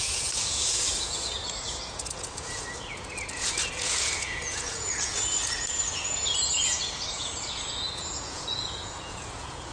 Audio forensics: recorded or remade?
remade